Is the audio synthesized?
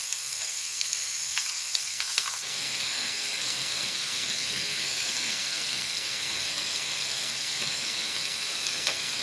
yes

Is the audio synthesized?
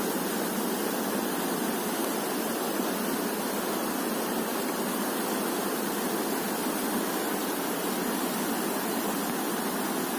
no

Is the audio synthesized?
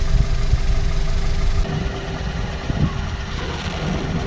no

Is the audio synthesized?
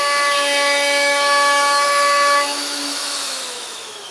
yes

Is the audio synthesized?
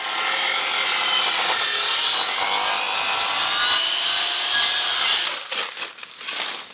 no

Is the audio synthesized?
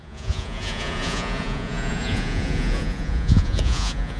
yes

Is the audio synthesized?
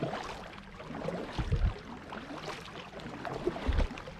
no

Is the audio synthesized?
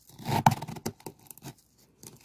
no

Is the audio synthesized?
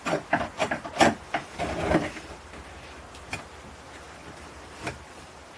no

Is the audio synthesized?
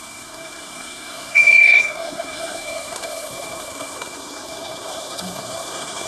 yes